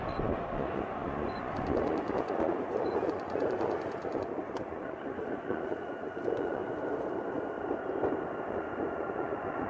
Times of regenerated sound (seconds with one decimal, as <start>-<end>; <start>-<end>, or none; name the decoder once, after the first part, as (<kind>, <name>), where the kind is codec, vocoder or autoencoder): 0.0-6.6 (vocoder, Vocos); 8.5-9.7